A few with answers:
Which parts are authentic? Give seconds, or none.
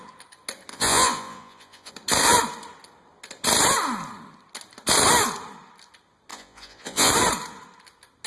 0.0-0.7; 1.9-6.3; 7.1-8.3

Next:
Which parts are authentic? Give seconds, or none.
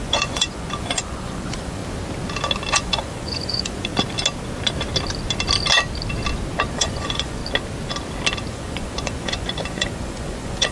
1.8-2.7; 3.9-6.7; 7.4-8.5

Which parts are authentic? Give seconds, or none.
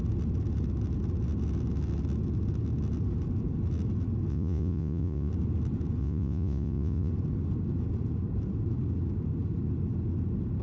0.0-4.3; 5.3-6.0; 7.1-10.6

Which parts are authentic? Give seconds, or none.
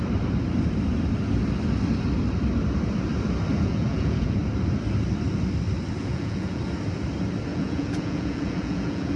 0.0-3.5; 4.4-6.0; 6.6-7.5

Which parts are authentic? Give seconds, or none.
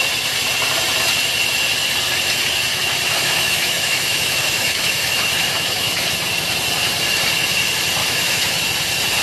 0.0-2.7; 6.1-8.0; 8.6-9.2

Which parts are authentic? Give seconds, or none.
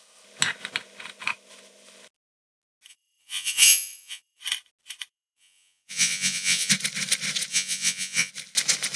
0.0-2.9; 4.4-5.1; 6.7-7.5; 8.3-9.0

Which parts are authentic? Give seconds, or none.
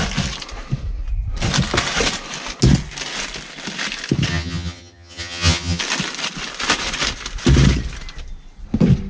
0.0-4.3; 5.8-9.1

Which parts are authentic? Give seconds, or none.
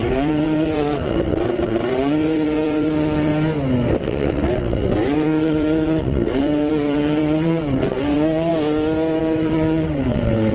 3.3-4.0; 8.5-9.2